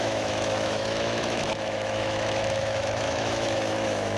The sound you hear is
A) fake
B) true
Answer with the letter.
A